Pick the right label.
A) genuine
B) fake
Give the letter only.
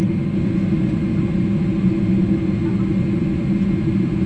A